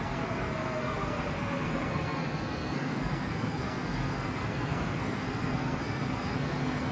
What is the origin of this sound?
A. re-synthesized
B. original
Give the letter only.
A